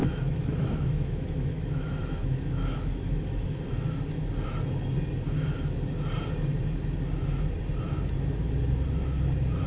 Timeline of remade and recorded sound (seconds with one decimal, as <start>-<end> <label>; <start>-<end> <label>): 0.0-3.7 remade; 3.7-9.7 recorded